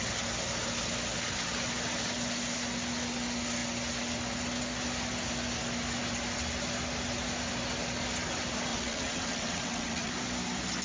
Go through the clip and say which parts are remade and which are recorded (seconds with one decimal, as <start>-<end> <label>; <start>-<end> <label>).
0.0-8.7 recorded; 8.7-10.1 remade; 10.1-10.8 recorded